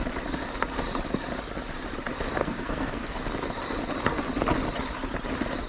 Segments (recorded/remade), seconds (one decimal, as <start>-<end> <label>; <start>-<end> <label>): 0.0-2.4 recorded; 2.4-3.2 remade; 3.2-5.7 recorded